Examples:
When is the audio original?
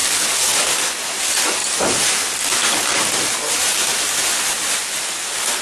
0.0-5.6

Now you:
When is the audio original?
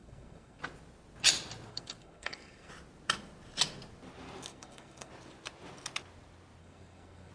0.6-1.7; 2.7-4.5; 5.1-6.6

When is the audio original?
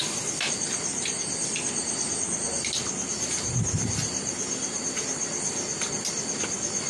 0.0-6.9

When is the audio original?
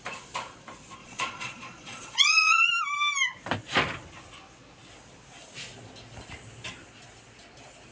0.0-1.0; 2.7-7.9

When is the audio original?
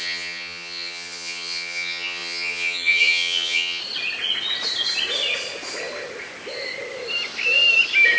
3.8-8.2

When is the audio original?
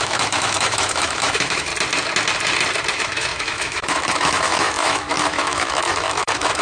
1.7-2.9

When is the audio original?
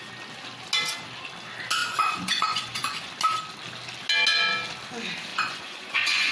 0.0-1.8; 3.1-5.3